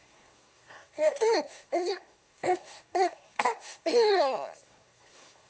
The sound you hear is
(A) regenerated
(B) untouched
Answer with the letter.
A